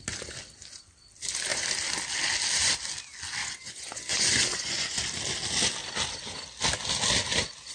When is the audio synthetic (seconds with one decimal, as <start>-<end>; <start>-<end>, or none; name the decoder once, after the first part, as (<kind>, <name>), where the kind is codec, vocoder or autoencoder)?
3.4-5.0 (vocoder, Vocos)